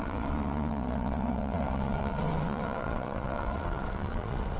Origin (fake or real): fake